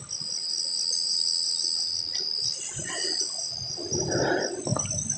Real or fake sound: real